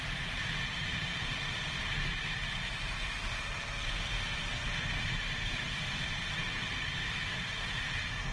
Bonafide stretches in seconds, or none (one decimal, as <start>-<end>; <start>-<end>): 0.0-1.0; 1.8-4.6; 6.1-7.2